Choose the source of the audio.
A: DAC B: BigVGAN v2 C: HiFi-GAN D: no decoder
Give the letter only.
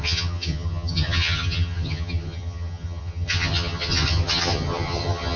C